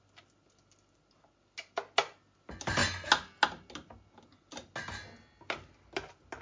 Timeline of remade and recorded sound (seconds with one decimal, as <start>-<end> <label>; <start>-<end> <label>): 0.0-6.4 recorded